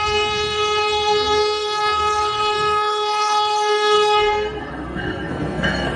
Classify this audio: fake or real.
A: fake